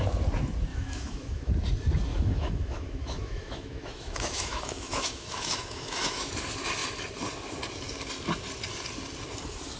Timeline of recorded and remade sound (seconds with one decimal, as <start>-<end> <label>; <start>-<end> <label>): 0.0-0.7 recorded; 0.7-1.5 remade; 1.5-2.1 recorded; 2.1-6.3 remade; 6.3-9.8 recorded